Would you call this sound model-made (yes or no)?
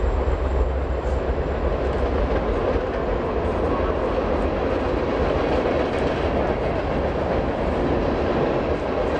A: no